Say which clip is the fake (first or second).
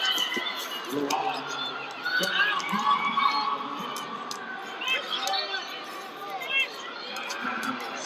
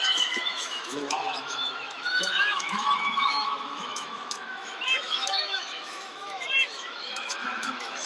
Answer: second